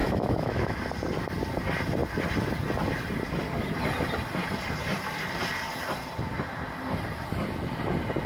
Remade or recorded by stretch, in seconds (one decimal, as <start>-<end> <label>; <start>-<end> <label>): 0.0-0.8 remade; 0.8-8.3 recorded